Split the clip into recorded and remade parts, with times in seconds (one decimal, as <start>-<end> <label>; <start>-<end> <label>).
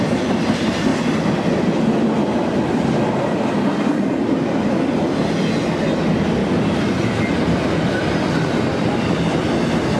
0.0-10.0 recorded